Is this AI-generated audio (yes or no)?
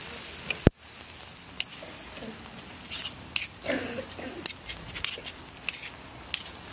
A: no